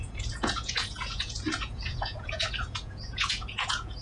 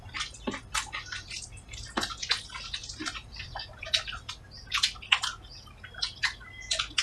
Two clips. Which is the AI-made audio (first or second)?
first